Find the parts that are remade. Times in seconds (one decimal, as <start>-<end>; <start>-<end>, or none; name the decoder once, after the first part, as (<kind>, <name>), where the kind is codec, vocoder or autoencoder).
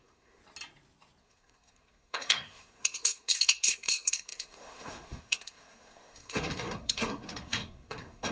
0.0-0.4 (codec, SNAC); 1.2-8.3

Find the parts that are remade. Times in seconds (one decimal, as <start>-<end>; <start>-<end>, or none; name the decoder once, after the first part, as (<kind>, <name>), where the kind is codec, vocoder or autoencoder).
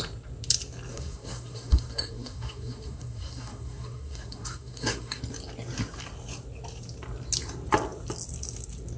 0.9-5.2 (codec, SNAC)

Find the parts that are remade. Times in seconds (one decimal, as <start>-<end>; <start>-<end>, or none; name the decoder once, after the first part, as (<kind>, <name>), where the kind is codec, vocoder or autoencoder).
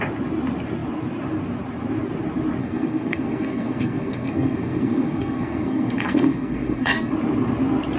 2.6-7.1 (codec, SNAC)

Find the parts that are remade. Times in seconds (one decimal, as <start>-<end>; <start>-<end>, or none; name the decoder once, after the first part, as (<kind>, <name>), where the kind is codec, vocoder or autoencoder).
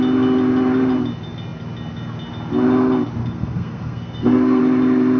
3.2-4.6 (codec, SNAC)